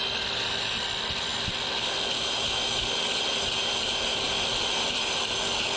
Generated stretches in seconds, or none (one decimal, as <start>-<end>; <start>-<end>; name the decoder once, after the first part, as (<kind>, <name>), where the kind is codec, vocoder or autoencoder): none